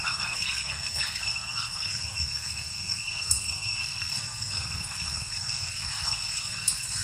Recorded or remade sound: remade